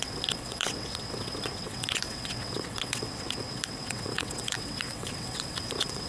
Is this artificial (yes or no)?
yes